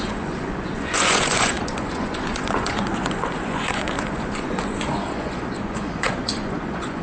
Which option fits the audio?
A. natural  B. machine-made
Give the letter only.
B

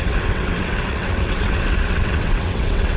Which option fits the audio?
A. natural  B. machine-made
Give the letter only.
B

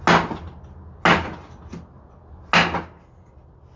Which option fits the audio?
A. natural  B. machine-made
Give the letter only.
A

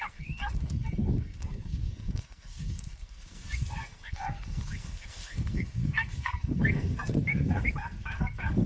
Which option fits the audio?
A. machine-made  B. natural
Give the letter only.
A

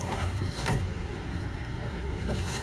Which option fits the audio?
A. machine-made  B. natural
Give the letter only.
A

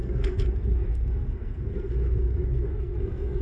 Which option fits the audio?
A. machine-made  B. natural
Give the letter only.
A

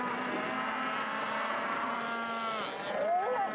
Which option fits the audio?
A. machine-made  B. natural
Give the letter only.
B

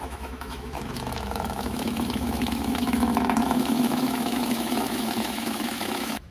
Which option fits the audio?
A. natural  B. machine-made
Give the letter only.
B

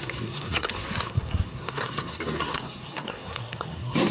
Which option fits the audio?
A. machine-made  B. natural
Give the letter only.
A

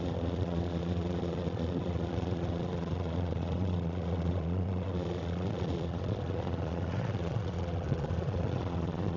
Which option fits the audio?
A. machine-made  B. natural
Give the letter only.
A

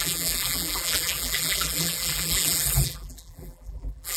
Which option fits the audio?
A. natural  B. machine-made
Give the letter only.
B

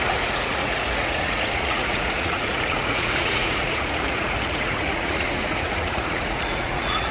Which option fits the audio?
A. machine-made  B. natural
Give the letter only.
A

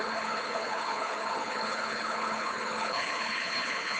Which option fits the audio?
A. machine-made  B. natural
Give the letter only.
A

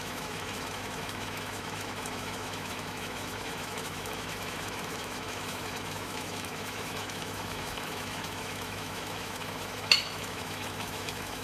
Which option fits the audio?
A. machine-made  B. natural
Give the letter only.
A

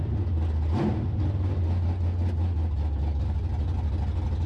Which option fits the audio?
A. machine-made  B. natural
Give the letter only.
B